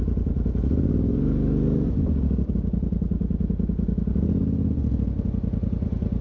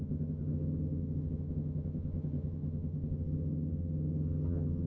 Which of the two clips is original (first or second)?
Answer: first